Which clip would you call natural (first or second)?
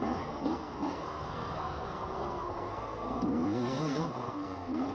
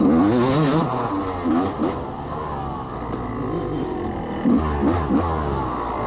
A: second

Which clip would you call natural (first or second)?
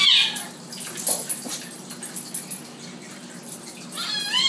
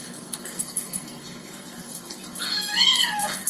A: first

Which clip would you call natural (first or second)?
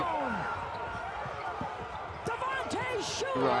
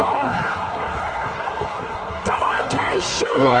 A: first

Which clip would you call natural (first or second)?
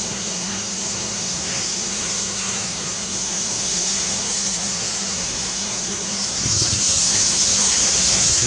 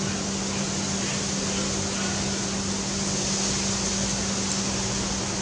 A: second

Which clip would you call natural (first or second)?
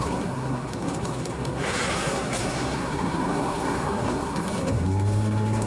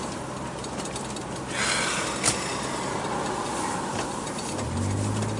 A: second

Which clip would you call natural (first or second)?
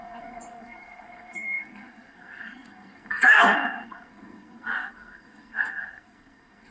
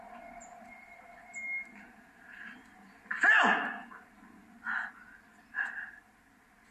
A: second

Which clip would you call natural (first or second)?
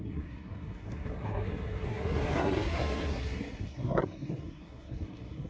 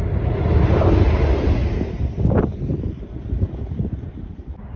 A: second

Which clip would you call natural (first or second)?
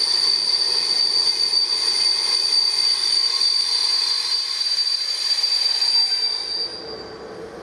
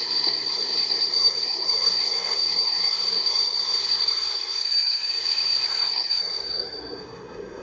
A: first